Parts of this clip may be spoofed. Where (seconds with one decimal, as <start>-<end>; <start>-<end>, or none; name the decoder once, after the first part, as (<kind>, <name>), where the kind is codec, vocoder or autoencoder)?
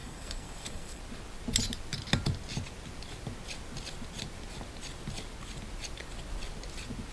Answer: 0.0-1.0 (codec, SNAC)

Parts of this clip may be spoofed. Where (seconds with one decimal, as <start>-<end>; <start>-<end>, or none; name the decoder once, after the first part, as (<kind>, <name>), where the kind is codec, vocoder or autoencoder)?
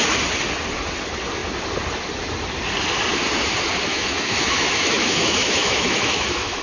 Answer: 3.9-6.6 (autoencoder, DAC-VAE)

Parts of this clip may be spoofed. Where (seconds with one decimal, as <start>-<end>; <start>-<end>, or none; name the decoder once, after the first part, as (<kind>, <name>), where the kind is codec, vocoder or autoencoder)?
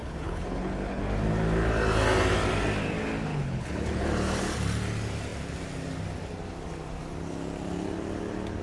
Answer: 0.0-1.0 (codec, HILCodec); 3.3-4.0